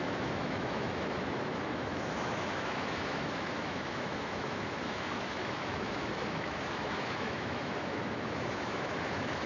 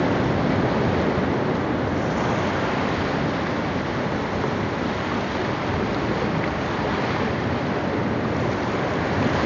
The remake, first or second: first